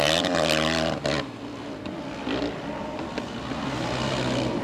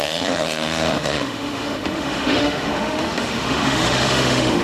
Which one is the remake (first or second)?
second